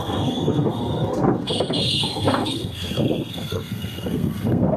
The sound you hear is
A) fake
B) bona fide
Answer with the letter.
A